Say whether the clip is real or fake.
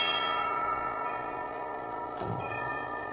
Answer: fake